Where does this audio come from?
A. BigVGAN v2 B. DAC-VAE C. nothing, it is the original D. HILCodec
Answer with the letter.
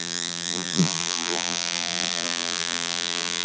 A